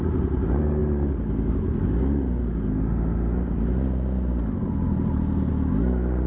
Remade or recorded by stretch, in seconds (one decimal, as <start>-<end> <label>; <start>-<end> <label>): 0.0-4.6 recorded; 4.6-5.5 remade; 5.5-6.3 recorded